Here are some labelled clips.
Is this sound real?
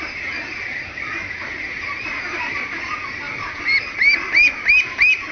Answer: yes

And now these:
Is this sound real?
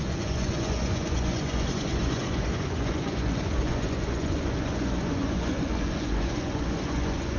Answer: no